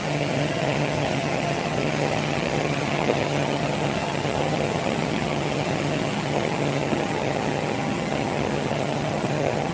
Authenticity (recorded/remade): remade